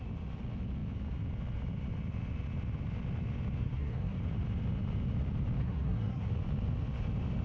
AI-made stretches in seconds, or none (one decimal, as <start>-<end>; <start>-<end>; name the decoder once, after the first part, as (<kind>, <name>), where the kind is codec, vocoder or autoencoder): 3.6-4.2 (codec, SNAC); 5.6-6.3